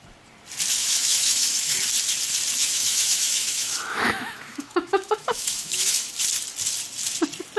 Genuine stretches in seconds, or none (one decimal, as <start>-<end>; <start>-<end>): 0.0-0.8; 1.8-2.6; 6.1-7.6